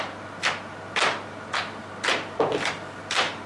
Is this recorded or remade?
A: recorded